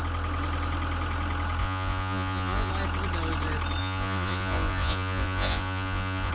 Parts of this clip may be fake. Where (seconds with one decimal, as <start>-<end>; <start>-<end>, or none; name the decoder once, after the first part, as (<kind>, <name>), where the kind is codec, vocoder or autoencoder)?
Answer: 1.6-2.7 (vocoder, Vocos); 3.8-6.3